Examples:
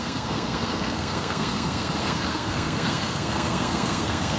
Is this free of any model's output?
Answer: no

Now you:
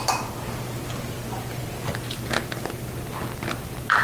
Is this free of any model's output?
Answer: yes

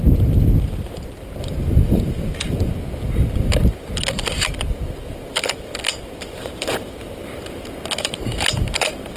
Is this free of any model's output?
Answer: no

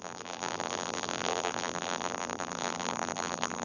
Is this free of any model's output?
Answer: no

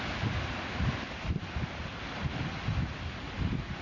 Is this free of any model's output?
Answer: yes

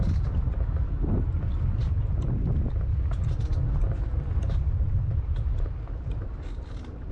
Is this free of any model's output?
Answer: yes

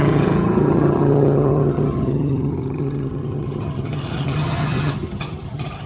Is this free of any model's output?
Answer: no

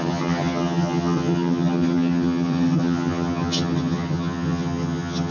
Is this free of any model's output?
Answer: no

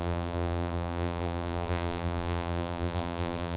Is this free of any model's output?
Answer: no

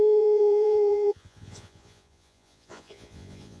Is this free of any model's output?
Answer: no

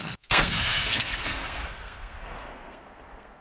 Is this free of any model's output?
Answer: no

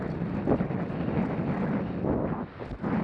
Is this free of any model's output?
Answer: yes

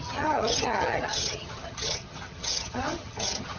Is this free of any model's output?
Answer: no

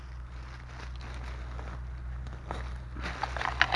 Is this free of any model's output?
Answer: yes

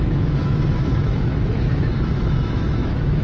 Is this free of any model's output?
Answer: no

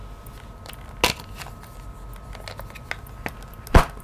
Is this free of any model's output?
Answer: yes